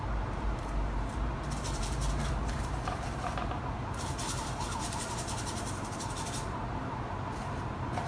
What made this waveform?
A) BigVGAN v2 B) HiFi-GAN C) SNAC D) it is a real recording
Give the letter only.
A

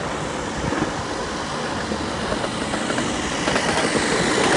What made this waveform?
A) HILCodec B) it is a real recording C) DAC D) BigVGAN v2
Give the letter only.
B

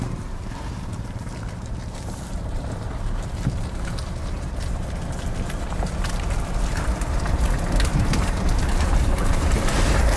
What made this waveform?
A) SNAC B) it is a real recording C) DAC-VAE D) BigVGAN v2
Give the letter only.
D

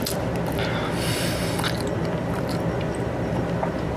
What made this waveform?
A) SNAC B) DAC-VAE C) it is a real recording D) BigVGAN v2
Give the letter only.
C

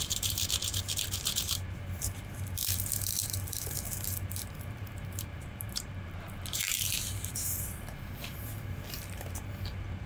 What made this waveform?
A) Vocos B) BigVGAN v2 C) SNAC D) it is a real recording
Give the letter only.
B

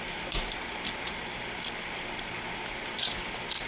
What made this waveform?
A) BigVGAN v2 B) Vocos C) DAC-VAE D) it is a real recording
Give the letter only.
D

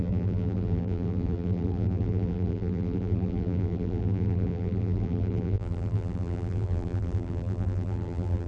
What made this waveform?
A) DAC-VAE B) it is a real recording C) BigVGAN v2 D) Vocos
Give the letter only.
C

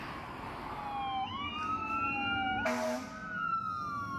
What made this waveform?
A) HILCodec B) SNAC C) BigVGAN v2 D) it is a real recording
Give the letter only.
D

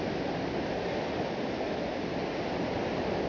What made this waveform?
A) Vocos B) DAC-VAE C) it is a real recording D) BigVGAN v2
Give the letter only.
C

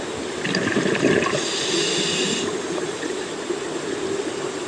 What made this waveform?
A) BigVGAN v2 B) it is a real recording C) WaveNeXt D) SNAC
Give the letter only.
A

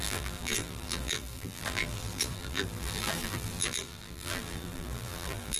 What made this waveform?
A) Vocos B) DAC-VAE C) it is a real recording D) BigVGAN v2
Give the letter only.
D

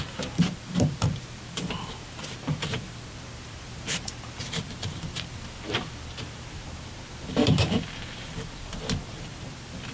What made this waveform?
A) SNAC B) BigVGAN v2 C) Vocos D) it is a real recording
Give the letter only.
B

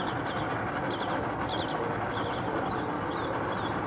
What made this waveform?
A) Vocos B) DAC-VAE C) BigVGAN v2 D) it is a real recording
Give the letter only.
D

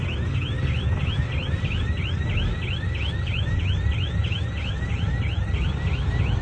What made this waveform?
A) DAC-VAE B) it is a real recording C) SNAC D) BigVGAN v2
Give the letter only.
B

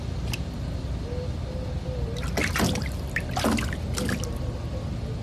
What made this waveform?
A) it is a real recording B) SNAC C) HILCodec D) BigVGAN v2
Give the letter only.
A